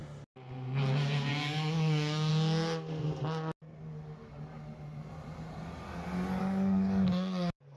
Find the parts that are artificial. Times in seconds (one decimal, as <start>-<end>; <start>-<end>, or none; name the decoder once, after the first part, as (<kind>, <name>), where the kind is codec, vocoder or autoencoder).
1.3-2.3 (codec, DAC); 6.4-7.8

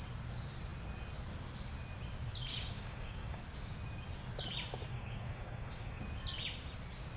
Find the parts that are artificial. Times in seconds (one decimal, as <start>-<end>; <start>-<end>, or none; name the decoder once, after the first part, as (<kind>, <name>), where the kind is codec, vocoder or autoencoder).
2.5-3.4 (codec, DAC); 4.9-6.0

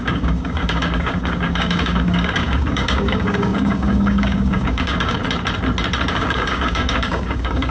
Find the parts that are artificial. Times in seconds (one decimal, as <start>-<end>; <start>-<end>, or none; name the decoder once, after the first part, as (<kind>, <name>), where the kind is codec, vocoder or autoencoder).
0.0-5.2 (codec, DAC); 6.1-7.7

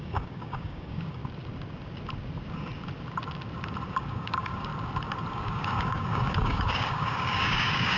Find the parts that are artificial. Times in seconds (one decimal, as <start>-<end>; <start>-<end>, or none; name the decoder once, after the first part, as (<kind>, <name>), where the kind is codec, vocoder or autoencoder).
0.0-1.2 (codec, DAC); 3.9-4.7; 5.3-8.0